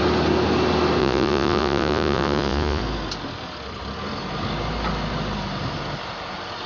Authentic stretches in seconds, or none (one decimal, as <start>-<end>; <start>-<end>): 0.0-1.0; 2.8-6.7